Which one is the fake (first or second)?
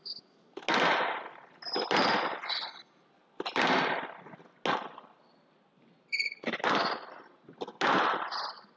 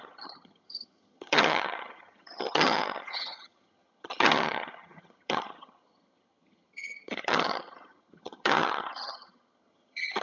second